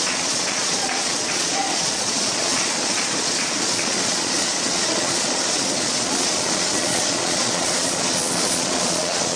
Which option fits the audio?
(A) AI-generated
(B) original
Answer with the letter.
A